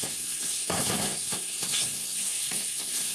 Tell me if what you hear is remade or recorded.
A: remade